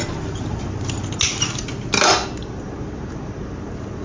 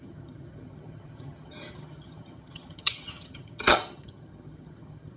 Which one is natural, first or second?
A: first